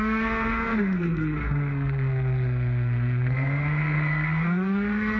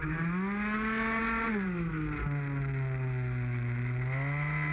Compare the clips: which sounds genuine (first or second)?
second